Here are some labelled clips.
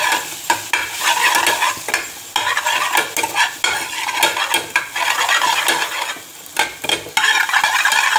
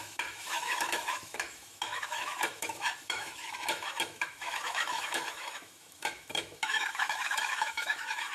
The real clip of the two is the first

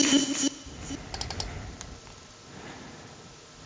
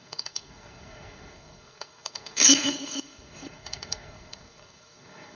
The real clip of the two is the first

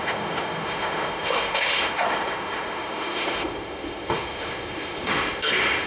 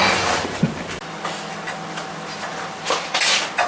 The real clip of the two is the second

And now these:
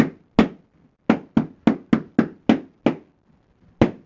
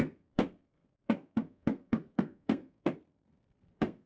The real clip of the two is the first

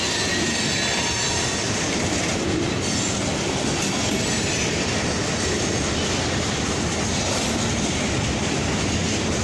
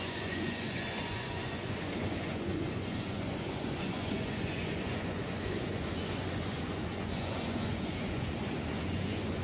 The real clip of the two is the first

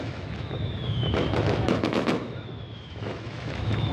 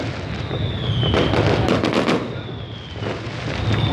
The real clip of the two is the second